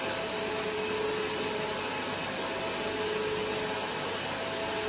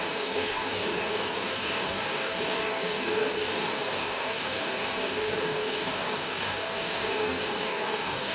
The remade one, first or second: second